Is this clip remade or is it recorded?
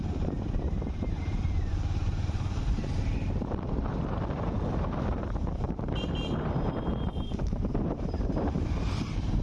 remade